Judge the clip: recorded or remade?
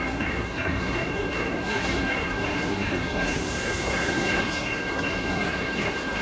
remade